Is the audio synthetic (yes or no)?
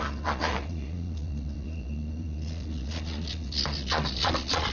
yes